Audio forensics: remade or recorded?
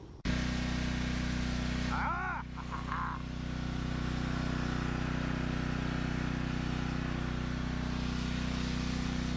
recorded